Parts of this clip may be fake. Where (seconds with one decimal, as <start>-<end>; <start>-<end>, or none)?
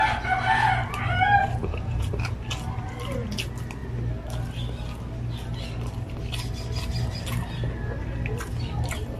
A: 1.6-2.1